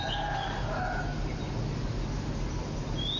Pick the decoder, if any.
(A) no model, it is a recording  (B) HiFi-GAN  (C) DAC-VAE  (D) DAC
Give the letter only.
A